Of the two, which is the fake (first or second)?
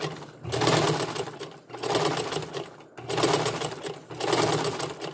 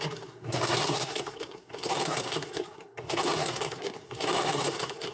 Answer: second